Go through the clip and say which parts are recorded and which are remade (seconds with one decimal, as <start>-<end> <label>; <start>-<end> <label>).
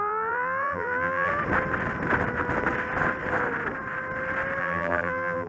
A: 0.0-1.3 remade; 1.3-4.6 recorded; 4.6-5.5 remade